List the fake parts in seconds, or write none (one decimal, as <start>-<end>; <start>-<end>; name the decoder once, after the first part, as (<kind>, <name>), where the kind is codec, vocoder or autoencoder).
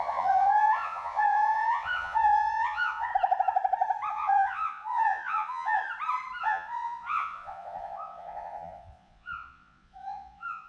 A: 0.0-3.1 (vocoder, Vocos); 4.1-5.8; 6.4-10.7